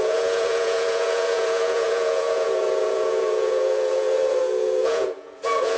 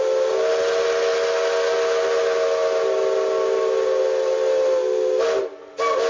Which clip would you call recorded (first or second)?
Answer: second